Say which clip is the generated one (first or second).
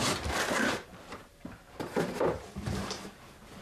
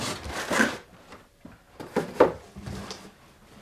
first